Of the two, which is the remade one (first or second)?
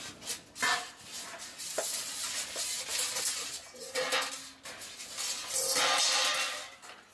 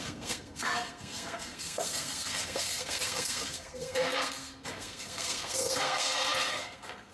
second